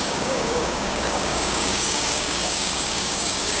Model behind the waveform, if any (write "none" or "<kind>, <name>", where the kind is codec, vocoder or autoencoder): codec, DAC